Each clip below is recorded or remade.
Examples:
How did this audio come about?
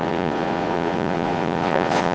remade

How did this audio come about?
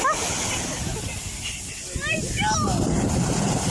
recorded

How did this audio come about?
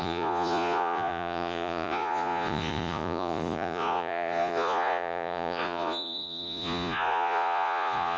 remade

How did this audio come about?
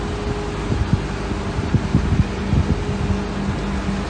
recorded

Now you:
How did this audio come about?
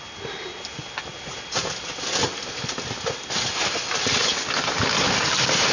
recorded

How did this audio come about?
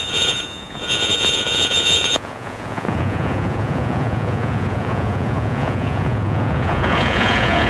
remade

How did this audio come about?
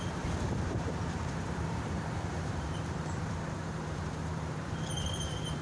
remade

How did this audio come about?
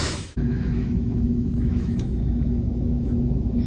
remade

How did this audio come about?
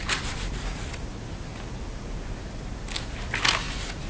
recorded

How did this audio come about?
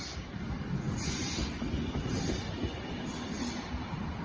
recorded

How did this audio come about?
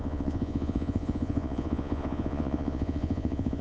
remade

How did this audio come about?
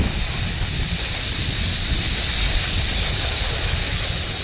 recorded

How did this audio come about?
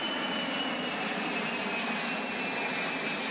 remade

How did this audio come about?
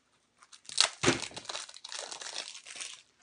recorded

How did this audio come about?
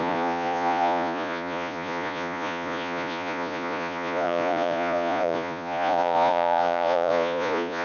remade